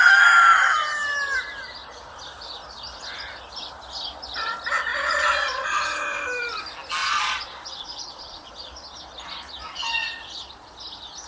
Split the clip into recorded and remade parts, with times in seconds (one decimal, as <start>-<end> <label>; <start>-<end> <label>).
0.0-4.9 recorded; 4.9-5.8 remade; 5.8-7.0 recorded; 7.0-8.5 remade; 8.5-11.3 recorded